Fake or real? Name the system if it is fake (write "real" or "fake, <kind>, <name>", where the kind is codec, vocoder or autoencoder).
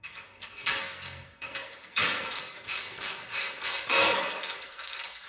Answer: fake, codec, SNAC